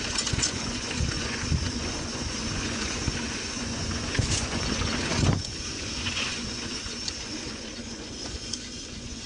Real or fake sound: fake